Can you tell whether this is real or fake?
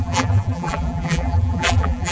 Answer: fake